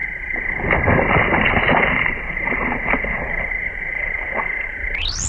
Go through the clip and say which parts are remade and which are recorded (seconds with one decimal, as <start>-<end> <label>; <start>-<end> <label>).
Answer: 0.0-5.3 recorded